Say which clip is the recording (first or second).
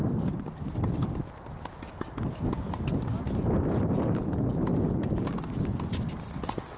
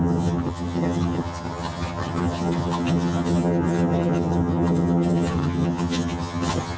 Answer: first